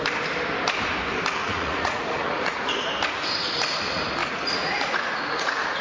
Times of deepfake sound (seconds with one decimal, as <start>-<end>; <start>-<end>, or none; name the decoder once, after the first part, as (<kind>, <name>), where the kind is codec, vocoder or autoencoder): 1.4-2.9 (vocoder, Vocos); 4.2-5.8